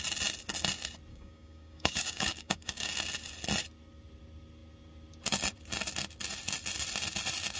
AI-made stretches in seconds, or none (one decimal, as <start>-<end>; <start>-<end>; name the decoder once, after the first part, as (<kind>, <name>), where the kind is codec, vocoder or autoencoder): 1.1-2.9 (codec, DAC)